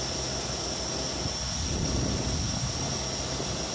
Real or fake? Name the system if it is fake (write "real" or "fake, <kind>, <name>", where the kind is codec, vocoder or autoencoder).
real